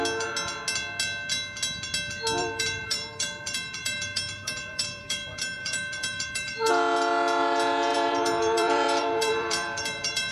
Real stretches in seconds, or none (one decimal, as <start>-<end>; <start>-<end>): 0.0-2.4; 6.7-7.9